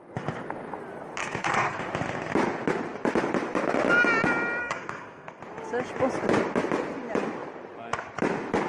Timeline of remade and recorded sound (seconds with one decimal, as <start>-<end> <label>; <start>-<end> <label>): 0.0-1.2 recorded; 1.2-1.8 remade; 1.8-4.6 recorded; 4.6-5.4 remade; 5.4-8.7 recorded